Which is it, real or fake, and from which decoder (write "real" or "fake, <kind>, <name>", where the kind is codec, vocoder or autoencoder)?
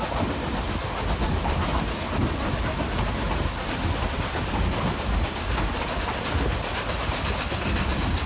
real